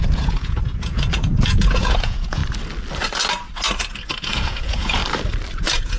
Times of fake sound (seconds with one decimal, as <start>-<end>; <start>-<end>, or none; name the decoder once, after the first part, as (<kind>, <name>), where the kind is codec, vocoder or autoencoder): 0.0-2.4 (vocoder, Vocos); 4.3-5.0; 5.6-6.0